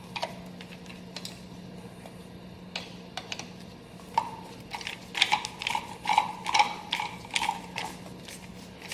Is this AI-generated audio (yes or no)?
no